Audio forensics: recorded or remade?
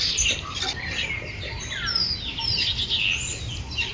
recorded